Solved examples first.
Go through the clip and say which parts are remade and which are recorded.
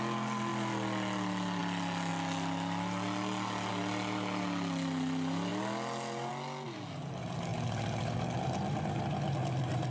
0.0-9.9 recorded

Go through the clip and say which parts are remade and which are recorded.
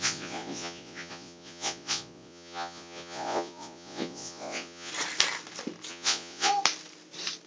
0.0-4.9 remade; 4.9-5.9 recorded; 5.9-6.5 remade; 6.5-7.5 recorded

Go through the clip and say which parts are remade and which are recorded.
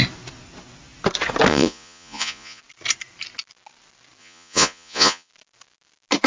0.0-1.5 recorded; 1.5-2.6 remade; 2.6-4.2 recorded; 4.2-5.3 remade; 5.3-6.3 recorded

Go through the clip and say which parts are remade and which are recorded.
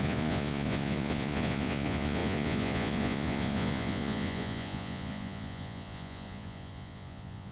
0.0-7.5 remade